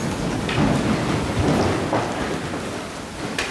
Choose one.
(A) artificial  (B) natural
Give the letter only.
B